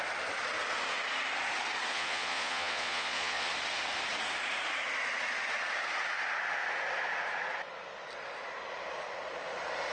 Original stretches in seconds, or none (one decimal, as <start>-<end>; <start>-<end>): 0.0-1.9; 3.5-9.9